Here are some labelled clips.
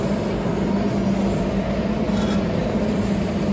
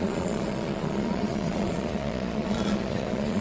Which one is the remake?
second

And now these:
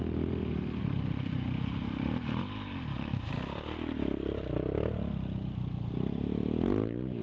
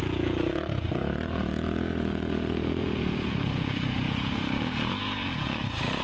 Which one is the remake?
second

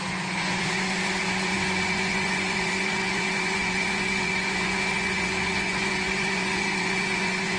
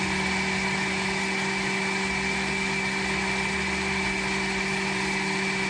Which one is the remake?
first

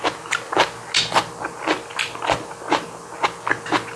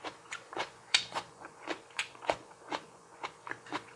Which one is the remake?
second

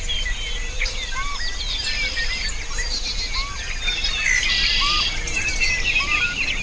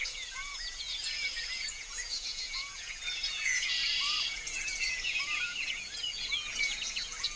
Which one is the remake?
second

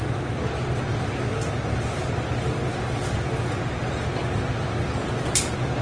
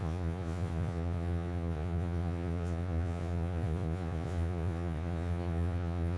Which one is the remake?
second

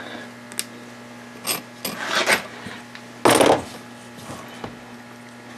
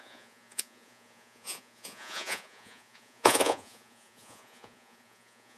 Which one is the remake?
second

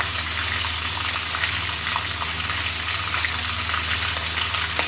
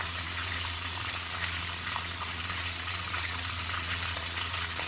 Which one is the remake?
second